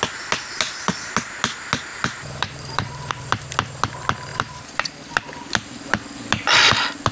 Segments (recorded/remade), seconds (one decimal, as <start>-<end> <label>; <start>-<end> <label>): 0.0-1.9 recorded; 1.9-3.1 remade; 3.1-4.3 recorded; 4.3-5.0 remade; 5.0-7.1 recorded